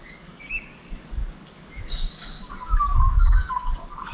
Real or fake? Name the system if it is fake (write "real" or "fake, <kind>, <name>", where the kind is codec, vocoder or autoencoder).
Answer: fake, codec, DAC